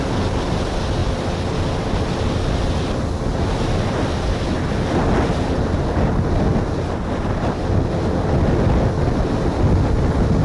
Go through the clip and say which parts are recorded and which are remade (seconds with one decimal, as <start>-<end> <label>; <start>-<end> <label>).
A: 0.0-10.4 recorded